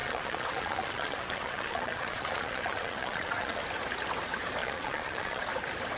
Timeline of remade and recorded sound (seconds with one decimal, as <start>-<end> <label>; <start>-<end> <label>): 0.0-3.6 remade; 3.6-4.6 recorded; 4.6-5.4 remade; 5.4-6.0 recorded